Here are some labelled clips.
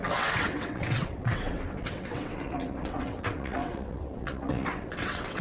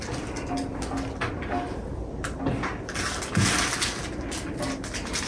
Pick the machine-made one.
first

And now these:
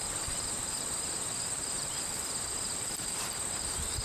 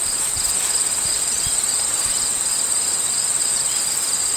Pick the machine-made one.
first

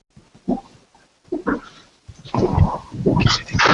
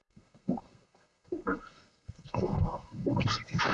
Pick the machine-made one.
second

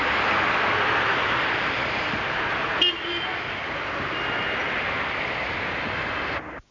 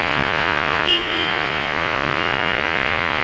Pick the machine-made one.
second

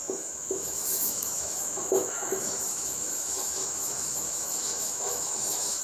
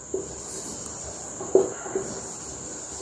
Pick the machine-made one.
first